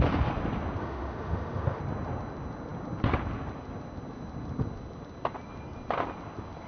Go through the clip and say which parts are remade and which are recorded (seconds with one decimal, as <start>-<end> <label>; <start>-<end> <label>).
0.0-0.8 recorded; 0.8-1.8 remade; 1.8-6.7 recorded